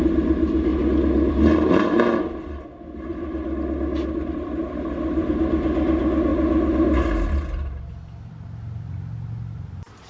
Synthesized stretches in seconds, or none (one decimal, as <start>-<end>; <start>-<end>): 3.1-5.4